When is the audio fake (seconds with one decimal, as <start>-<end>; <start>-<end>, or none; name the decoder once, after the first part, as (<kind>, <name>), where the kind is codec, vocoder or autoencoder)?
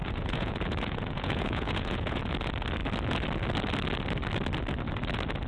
0.0-2.2 (vocoder, Vocos)